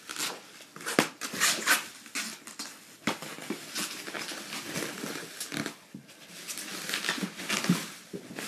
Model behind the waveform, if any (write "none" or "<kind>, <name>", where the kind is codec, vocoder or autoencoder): none